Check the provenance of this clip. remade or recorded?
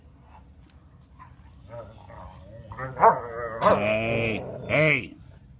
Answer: recorded